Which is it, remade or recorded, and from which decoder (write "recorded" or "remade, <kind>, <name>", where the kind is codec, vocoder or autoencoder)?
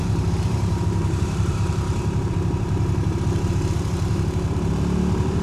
remade, vocoder, BigVGAN v2